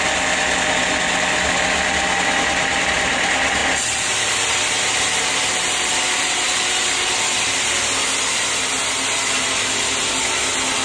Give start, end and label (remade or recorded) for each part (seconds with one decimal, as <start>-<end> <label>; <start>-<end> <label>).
0.0-10.8 recorded